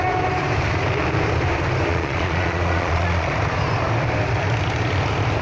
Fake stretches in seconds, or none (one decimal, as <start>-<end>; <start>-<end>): 1.9-3.3